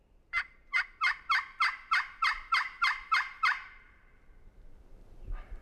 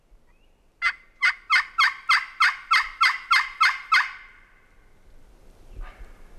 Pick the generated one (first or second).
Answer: first